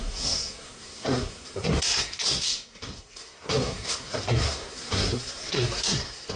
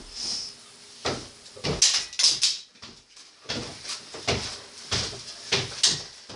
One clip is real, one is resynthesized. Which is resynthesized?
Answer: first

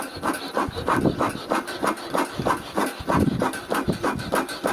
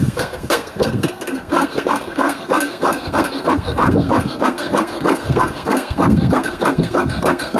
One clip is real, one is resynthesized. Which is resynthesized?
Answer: second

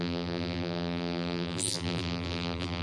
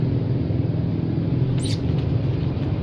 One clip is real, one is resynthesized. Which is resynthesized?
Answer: first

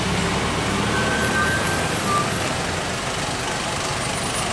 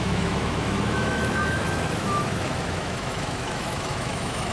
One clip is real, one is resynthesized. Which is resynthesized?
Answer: second